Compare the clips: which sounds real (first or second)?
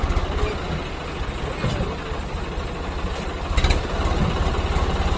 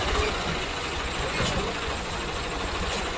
first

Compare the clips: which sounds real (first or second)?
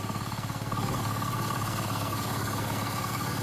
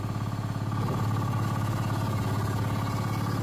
second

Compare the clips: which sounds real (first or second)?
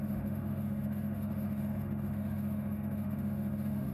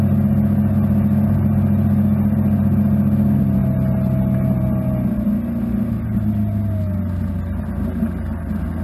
second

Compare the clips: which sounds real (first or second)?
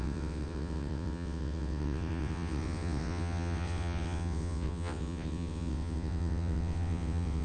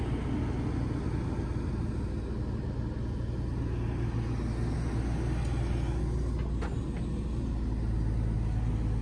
second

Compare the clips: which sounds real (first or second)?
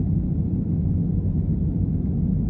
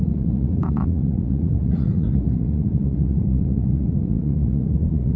first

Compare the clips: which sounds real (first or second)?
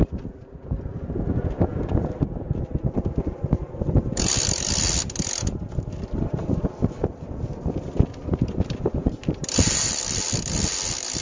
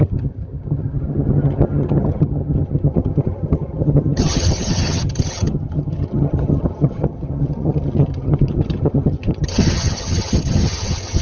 first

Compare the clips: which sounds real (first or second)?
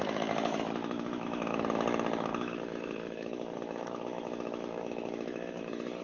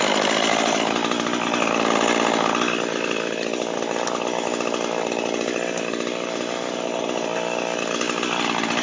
second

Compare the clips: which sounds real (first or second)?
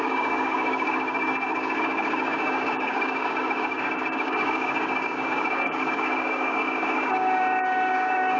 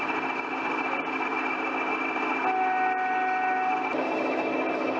second